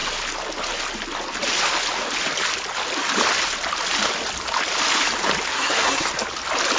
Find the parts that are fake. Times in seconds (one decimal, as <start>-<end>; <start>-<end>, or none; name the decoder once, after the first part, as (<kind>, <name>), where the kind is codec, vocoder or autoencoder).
5.5-6.1 (codec, SNAC)